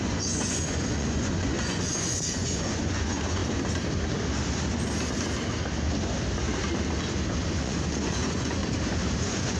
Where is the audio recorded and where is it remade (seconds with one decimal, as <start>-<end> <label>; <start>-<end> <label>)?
0.0-3.4 remade; 3.4-7.5 recorded; 7.5-8.6 remade; 8.6-9.2 recorded; 9.2-9.6 remade